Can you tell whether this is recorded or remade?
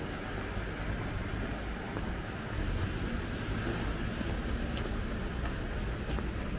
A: recorded